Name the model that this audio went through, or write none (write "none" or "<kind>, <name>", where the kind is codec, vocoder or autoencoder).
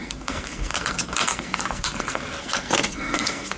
codec, SNAC